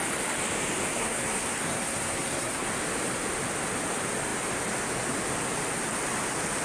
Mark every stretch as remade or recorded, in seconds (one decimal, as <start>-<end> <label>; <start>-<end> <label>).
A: 0.0-1.0 recorded; 1.0-2.7 remade; 2.7-6.6 recorded